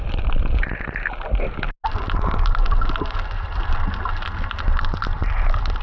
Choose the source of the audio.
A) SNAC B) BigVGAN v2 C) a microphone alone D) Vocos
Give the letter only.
C